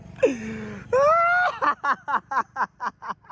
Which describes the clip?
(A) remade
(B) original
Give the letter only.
B